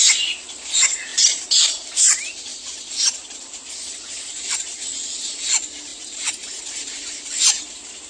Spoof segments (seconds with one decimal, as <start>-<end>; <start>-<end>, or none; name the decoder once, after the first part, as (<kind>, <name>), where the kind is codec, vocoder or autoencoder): 2.5-3.7 (vocoder, BigVGAN v2); 5.9-7.6